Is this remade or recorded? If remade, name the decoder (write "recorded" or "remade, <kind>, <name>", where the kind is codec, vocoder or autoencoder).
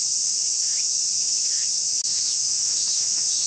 remade, autoencoder, DAC-VAE